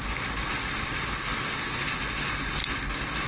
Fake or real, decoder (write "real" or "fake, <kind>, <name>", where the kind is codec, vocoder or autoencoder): real